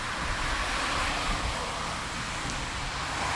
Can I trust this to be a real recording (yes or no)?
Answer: no